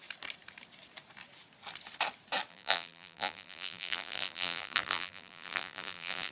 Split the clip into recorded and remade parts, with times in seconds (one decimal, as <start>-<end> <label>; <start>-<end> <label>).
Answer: 0.0-2.5 recorded; 2.5-6.3 remade